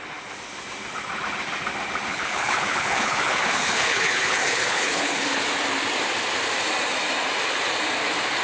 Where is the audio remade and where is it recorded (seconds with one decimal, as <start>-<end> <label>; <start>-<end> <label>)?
0.0-2.1 recorded; 2.1-5.4 remade; 5.4-8.4 recorded